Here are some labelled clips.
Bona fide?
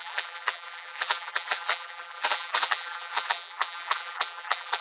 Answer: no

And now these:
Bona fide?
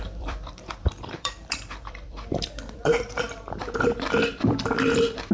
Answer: no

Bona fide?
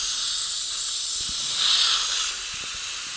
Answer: yes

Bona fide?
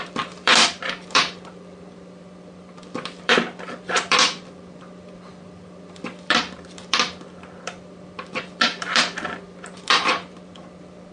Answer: no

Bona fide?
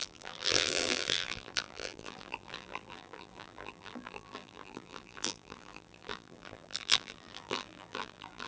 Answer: no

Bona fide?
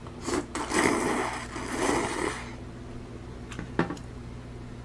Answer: yes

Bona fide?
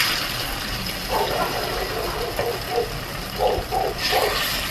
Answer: no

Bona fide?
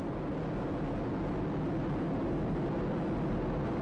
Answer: yes